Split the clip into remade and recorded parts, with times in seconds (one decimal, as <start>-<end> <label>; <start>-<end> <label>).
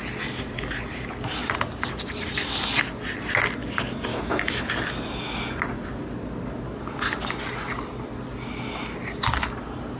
0.0-4.1 recorded; 4.1-4.7 remade; 4.7-10.0 recorded